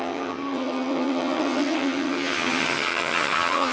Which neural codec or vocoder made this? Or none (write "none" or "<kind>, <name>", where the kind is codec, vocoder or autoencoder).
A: vocoder, HiFi-GAN